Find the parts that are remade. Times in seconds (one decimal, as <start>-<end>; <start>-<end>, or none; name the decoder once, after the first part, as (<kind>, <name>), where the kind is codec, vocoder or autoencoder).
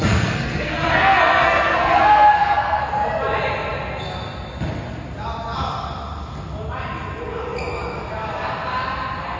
0.0-2.8 (codec, SNAC)